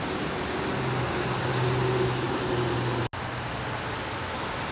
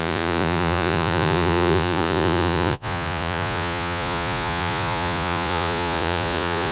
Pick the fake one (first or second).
second